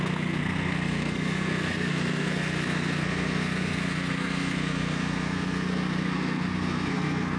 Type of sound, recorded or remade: remade